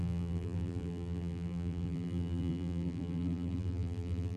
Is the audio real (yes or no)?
no